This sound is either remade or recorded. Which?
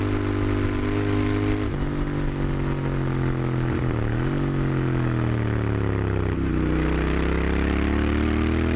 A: recorded